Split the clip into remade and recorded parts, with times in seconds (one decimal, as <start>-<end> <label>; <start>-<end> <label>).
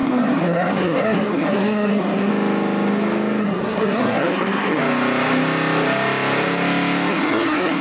0.0-2.3 remade; 2.3-3.4 recorded; 3.4-4.8 remade; 4.8-7.1 recorded; 7.1-7.8 remade